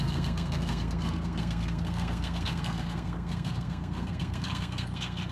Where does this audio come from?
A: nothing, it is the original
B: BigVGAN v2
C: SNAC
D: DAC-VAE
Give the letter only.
C